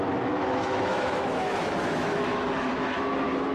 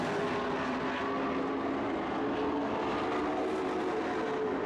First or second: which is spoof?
first